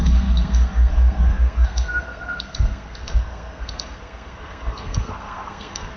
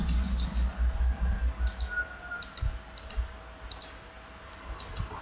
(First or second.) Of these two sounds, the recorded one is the second